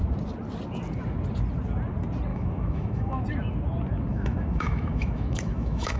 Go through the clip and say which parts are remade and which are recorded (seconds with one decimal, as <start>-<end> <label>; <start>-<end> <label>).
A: 0.0-2.3 recorded; 2.3-3.2 remade; 3.2-4.1 recorded; 4.1-6.0 remade